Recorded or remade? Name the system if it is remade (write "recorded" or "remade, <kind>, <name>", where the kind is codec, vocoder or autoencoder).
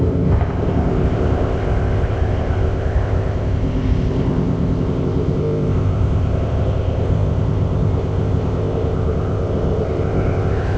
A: remade, codec, ZipCodec